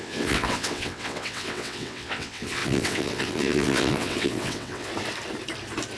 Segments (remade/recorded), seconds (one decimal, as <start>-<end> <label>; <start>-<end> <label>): 0.0-4.9 remade; 4.9-6.0 recorded